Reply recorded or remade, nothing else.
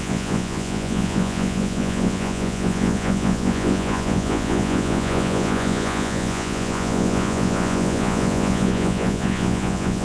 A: remade